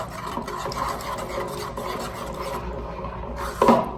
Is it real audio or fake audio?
real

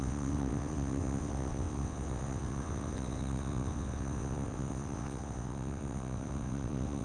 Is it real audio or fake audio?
fake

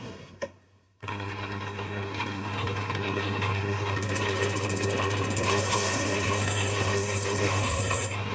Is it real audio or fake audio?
fake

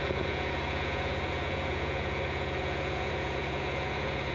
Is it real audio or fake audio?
fake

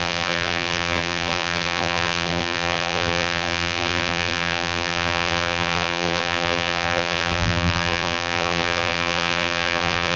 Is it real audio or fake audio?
fake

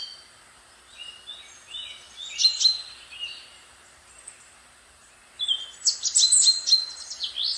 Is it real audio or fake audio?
real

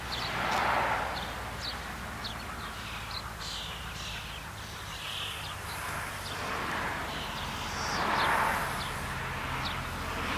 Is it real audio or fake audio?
real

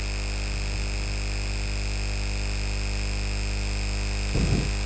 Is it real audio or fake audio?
real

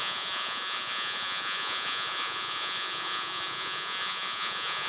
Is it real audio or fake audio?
fake